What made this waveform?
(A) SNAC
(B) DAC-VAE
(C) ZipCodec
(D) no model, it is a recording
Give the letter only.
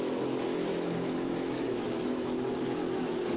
B